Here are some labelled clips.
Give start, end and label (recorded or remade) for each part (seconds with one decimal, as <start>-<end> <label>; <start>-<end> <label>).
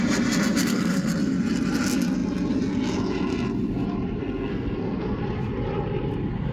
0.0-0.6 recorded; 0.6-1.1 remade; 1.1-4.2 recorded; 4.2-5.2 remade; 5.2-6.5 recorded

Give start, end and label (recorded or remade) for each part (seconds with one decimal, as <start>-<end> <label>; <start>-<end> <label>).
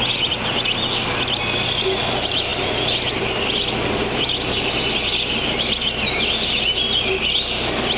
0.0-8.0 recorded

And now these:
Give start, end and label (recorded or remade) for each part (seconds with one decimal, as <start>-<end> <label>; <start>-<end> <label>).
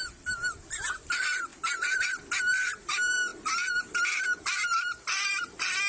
0.0-1.5 remade; 1.5-2.5 recorded; 2.5-3.3 remade; 3.3-4.4 recorded; 4.4-5.9 remade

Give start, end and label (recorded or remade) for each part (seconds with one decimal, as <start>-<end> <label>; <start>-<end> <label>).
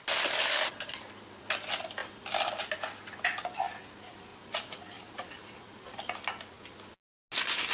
0.0-7.7 recorded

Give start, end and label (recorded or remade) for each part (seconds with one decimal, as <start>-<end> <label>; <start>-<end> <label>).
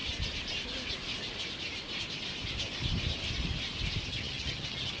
0.0-4.1 recorded; 4.1-5.0 remade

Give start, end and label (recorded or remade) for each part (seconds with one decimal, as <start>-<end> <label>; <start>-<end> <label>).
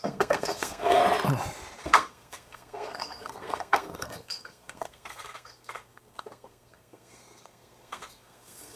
0.0-1.0 remade; 1.0-1.8 recorded; 1.8-8.8 remade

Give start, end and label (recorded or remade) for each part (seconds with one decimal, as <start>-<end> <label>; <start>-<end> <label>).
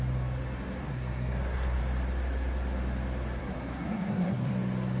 0.0-0.8 recorded; 0.8-1.8 remade; 1.8-3.4 recorded; 3.4-4.5 remade; 4.5-5.0 recorded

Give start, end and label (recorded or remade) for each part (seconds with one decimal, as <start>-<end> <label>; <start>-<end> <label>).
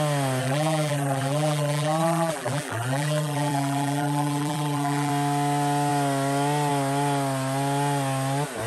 0.0-0.4 recorded; 0.4-5.1 remade; 5.1-8.7 recorded